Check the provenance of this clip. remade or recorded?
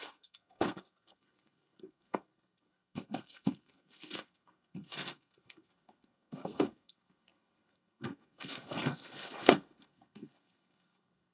remade